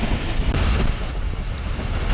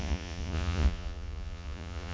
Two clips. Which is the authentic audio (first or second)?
first